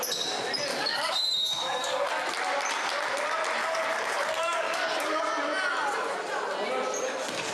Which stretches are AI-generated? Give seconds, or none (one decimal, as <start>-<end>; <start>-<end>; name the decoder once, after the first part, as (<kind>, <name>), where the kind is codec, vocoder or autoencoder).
0.7-2.1 (codec, DAC); 3.6-5.2